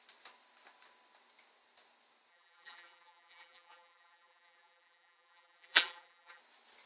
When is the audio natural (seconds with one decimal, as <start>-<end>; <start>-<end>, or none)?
0.0-2.3; 6.4-6.9